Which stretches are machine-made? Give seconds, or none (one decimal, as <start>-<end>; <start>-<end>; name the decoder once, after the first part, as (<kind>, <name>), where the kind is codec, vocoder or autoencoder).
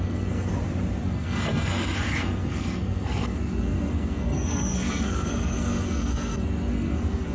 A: 0.0-0.5 (codec, SNAC); 1.0-7.3